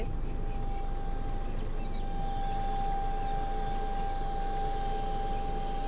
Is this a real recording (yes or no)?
yes